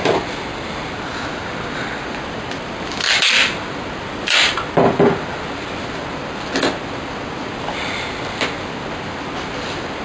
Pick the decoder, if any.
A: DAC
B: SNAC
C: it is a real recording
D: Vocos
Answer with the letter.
C